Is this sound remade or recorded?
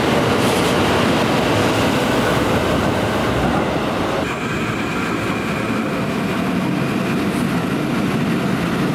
recorded